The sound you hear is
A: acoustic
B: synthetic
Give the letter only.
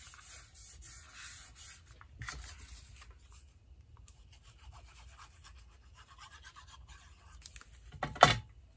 A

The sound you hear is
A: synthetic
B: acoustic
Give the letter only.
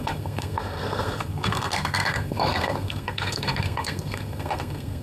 A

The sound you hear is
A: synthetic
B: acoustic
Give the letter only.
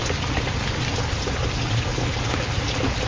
B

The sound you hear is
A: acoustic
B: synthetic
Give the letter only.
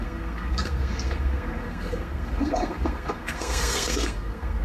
B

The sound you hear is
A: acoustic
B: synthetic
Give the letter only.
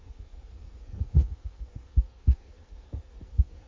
B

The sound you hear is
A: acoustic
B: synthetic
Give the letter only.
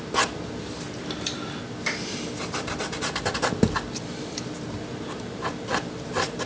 A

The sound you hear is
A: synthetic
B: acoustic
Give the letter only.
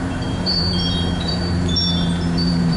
A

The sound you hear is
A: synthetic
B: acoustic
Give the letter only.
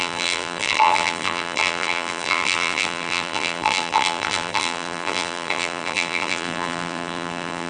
A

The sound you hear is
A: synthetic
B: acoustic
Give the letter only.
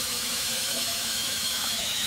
A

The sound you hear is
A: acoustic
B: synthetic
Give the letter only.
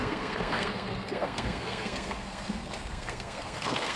B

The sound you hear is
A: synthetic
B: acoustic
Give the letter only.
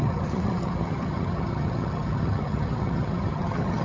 A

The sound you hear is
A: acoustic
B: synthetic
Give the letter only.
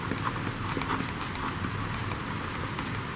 A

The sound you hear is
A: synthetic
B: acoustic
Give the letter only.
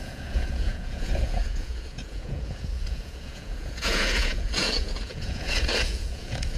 A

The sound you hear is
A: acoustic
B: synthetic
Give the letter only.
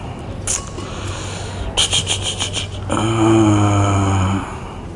A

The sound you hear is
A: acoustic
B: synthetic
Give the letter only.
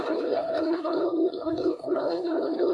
B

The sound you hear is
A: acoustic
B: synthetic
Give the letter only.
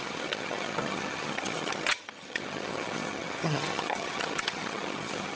B